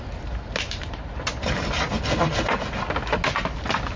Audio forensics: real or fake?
real